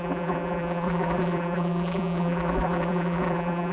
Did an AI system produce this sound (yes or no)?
yes